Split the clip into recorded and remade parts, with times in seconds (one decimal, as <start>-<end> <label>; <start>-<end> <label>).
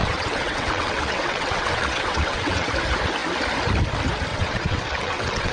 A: 0.0-2.7 remade; 2.7-4.3 recorded; 4.3-5.5 remade